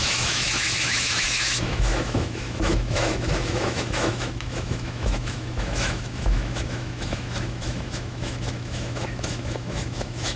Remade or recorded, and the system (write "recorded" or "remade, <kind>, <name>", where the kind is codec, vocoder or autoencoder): remade, autoencoder, DAC-VAE